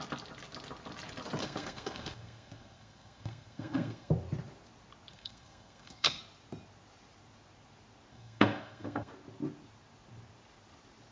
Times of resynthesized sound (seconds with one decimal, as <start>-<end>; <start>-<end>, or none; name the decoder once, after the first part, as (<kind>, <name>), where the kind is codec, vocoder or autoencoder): 1.4-4.1 (codec, SNAC); 5.1-6.2; 8.1-9.1